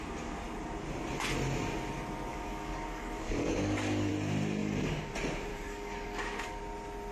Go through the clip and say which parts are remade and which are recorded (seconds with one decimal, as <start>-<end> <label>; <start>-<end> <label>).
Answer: 0.0-2.3 recorded; 2.3-4.1 remade; 4.1-4.6 recorded; 4.6-5.1 remade; 5.1-5.5 recorded; 5.5-6.6 remade; 6.6-7.1 recorded